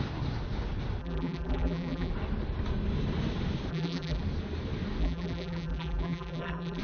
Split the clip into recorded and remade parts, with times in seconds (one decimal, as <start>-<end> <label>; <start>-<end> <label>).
0.0-1.0 recorded; 1.0-2.1 remade; 2.1-3.7 recorded; 3.7-4.2 remade; 4.2-5.0 recorded; 5.0-6.8 remade